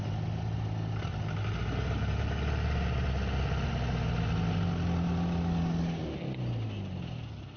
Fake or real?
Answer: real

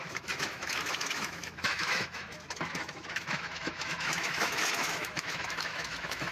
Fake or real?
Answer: fake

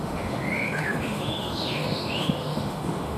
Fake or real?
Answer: fake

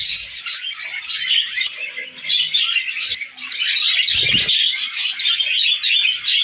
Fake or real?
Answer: real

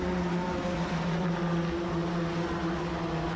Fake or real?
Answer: real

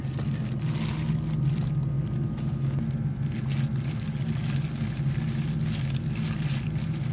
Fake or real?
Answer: real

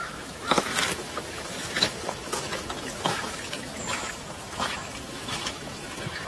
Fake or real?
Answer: fake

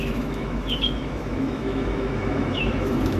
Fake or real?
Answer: fake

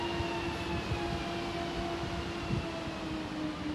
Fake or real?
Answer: real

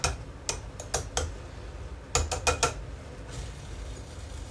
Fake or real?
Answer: real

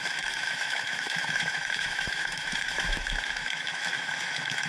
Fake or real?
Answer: fake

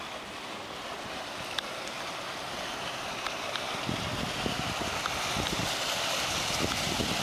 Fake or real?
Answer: real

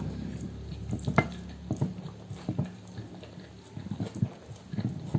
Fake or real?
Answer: real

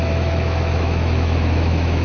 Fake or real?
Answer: fake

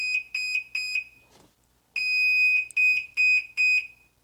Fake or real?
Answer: real